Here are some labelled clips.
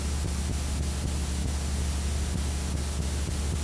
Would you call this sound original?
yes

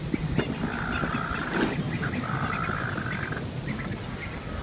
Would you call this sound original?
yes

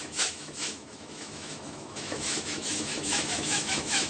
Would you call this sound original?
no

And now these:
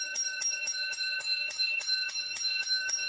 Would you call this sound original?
no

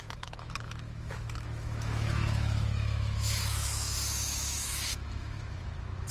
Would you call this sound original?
no